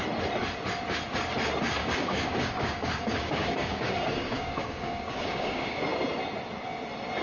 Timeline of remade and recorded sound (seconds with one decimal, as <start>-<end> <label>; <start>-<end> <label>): 0.0-1.8 recorded; 1.8-5.8 remade; 5.8-7.2 recorded

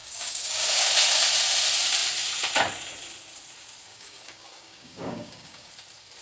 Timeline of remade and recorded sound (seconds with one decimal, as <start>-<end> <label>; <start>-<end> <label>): 0.0-0.9 remade; 0.9-3.9 recorded; 3.9-5.7 remade; 5.7-6.2 recorded

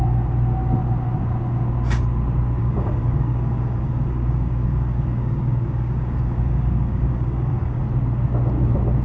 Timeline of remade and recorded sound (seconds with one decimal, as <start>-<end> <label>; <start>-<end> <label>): 0.0-2.6 recorded; 2.6-7.8 remade; 7.8-9.0 recorded

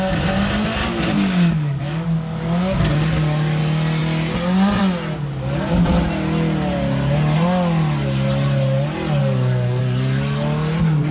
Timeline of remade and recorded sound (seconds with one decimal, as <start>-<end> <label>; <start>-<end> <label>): 0.0-0.8 recorded; 0.8-3.6 remade; 3.6-9.2 recorded; 9.2-9.8 remade; 9.8-11.1 recorded

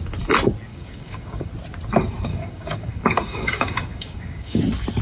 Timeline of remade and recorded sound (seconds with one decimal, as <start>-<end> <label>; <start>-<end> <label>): 0.0-0.7 recorded; 0.7-1.5 remade; 1.5-2.3 recorded; 2.3-4.6 remade; 4.6-5.0 recorded